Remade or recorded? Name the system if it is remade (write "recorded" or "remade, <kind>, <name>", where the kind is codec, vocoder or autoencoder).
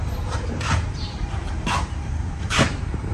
remade, vocoder, BigVGAN v2